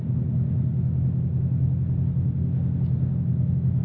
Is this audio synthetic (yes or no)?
no